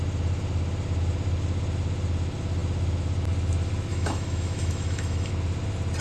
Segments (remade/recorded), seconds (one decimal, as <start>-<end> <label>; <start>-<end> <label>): 0.0-3.9 recorded; 3.9-5.3 remade; 5.3-6.0 recorded